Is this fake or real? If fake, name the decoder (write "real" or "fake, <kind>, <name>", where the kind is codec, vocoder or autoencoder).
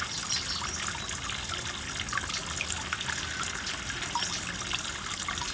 real